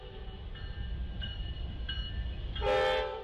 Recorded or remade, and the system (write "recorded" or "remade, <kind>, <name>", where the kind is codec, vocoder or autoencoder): recorded